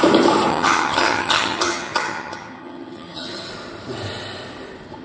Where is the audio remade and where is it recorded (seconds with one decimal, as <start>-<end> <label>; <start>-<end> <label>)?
0.0-0.5 recorded; 0.5-3.5 remade; 3.5-5.0 recorded